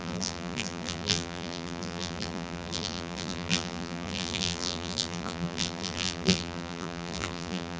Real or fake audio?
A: fake